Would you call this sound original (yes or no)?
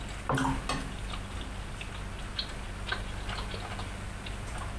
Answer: yes